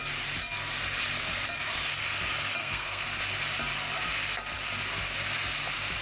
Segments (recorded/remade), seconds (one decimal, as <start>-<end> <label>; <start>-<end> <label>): 0.0-2.6 recorded; 2.6-3.2 remade; 3.2-6.0 recorded